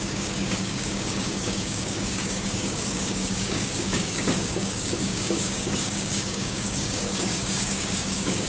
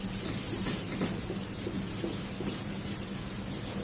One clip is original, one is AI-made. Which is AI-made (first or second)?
first